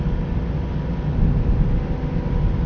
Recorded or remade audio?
recorded